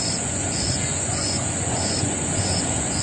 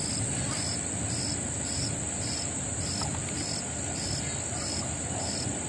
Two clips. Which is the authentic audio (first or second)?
second